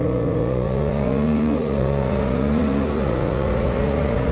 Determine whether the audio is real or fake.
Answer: fake